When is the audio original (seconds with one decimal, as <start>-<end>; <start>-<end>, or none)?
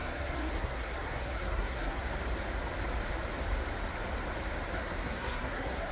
2.0-4.7